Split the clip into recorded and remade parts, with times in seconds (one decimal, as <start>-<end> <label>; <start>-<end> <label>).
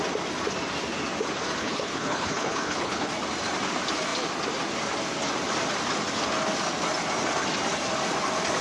0.0-1.6 recorded; 1.6-3.1 remade; 3.1-8.6 recorded